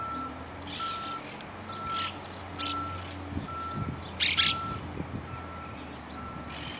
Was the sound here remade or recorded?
recorded